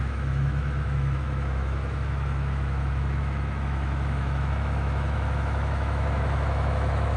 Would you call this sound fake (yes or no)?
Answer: yes